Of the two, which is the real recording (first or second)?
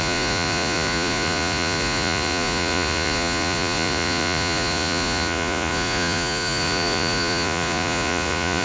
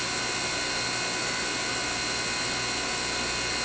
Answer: second